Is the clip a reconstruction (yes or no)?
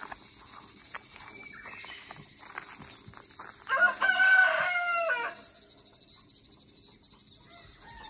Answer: no